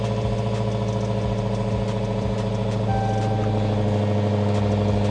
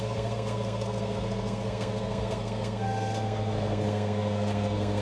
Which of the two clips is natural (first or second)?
first